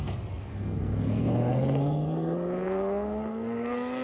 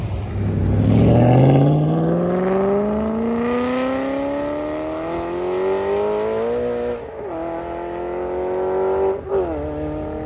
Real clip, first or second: second